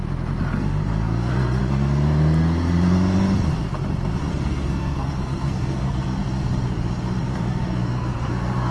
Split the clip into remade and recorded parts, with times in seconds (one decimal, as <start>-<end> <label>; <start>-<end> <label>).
0.0-0.5 recorded; 0.5-1.6 remade; 1.6-4.3 recorded; 4.3-6.2 remade; 6.2-7.2 recorded; 7.2-8.7 remade